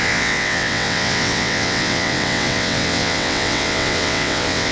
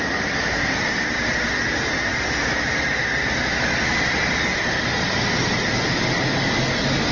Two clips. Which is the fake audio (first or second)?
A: first